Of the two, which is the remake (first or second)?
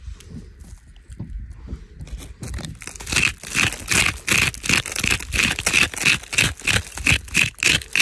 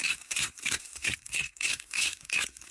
second